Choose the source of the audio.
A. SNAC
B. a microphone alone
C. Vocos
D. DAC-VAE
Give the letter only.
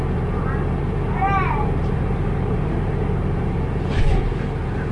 B